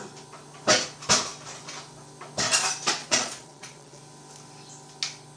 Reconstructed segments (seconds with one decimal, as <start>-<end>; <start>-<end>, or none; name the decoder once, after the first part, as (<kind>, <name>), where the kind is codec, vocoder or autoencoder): 3.0-4.0 (vocoder, Vocos)